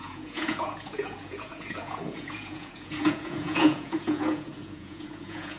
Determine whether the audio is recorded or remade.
remade